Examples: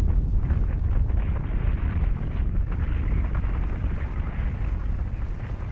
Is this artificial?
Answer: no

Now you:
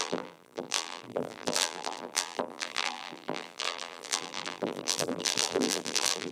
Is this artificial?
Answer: yes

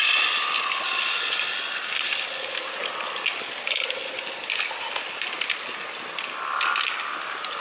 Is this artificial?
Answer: no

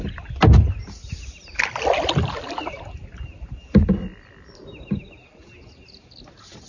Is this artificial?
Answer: no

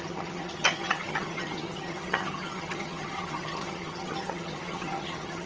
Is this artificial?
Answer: yes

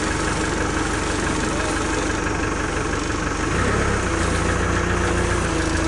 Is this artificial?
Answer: no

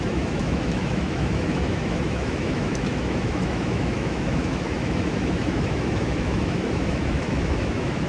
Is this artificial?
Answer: yes